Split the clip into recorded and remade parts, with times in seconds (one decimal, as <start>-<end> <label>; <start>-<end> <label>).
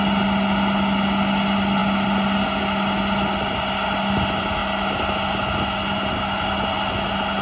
0.0-7.4 recorded